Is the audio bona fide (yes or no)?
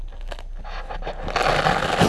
yes